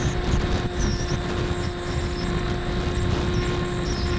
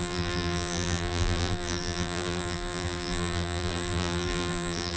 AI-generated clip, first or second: second